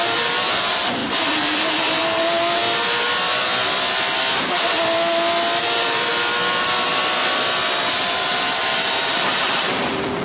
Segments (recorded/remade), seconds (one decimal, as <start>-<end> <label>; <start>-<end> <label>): 0.0-2.6 remade; 2.6-5.6 recorded; 5.6-6.1 remade; 6.1-7.9 recorded; 7.9-10.2 remade